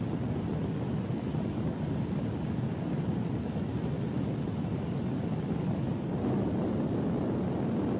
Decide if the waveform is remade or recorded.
recorded